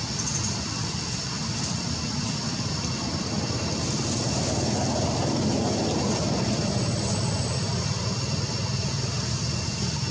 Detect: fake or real real